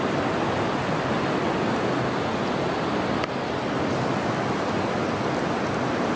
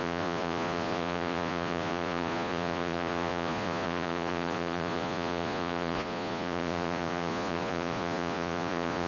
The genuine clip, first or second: first